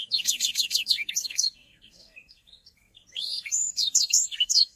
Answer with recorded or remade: remade